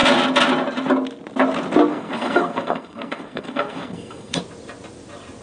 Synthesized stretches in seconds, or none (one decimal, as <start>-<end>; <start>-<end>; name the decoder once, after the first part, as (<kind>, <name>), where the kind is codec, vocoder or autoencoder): 1.9-4.4 (codec, SNAC)